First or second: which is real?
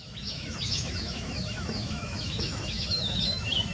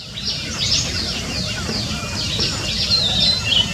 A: second